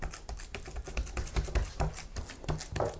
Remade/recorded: recorded